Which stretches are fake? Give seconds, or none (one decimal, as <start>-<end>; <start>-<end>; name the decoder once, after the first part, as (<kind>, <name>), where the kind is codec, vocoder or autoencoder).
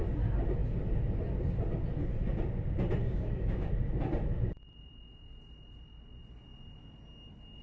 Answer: 3.0-3.7 (codec, DAC)